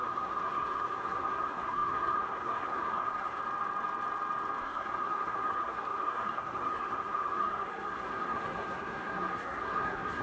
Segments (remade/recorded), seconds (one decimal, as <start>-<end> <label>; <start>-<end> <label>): 0.0-3.4 remade; 3.4-4.6 recorded; 4.6-10.2 remade